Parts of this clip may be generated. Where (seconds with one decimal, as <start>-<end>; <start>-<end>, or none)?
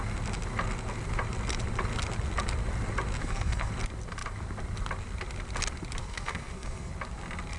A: 3.2-3.7; 6.0-6.9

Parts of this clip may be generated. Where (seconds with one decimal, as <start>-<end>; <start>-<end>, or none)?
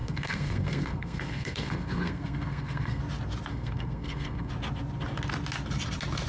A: 0.0-3.0; 3.5-4.5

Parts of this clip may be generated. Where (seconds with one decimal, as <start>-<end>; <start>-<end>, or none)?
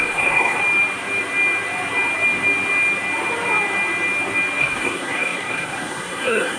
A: 0.0-0.6; 4.6-6.6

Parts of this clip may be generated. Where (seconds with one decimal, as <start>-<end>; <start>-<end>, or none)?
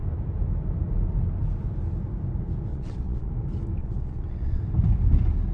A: 2.7-3.3; 3.8-4.6